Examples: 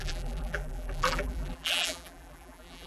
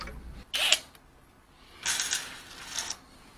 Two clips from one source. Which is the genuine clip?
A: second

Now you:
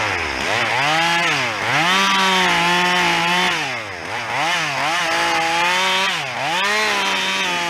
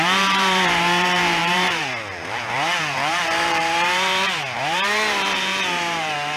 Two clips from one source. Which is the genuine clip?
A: first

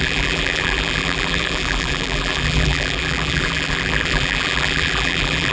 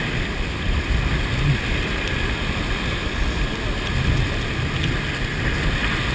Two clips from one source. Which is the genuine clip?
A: second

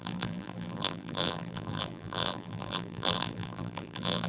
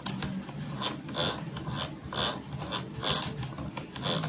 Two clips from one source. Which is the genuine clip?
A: second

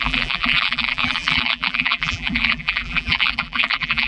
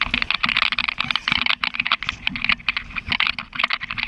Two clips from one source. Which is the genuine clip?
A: second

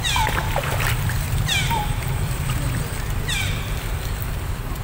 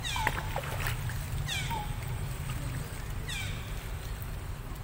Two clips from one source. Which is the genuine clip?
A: second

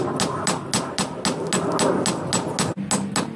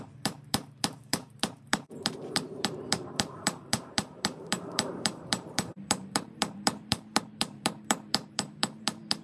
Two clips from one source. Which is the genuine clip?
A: first